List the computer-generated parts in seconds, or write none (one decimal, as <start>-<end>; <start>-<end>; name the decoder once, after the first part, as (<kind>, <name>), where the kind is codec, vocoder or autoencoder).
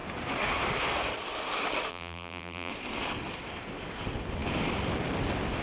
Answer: 1.9-2.7 (vocoder, BigVGAN v2)